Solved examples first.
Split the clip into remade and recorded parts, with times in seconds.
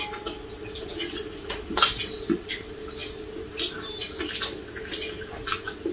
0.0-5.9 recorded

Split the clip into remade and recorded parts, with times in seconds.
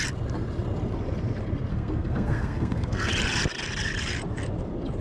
0.0-1.7 recorded; 1.7-3.1 remade; 3.1-5.0 recorded